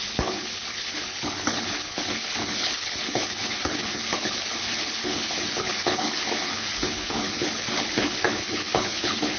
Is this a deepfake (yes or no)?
yes